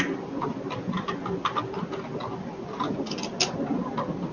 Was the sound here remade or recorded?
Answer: recorded